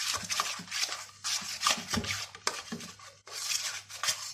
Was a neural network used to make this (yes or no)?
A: no